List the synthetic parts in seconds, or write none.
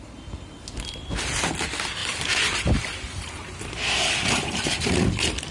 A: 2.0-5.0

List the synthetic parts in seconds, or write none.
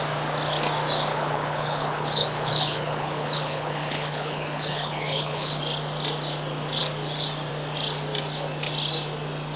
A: 1.1-5.6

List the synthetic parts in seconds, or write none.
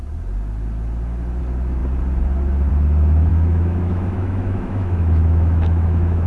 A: 3.3-6.3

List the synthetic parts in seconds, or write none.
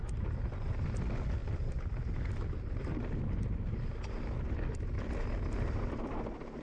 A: none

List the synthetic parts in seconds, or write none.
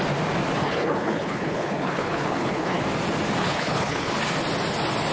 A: 0.6-2.8; 3.4-4.1